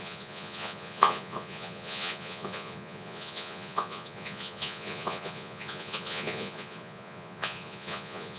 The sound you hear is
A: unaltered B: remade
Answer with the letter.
B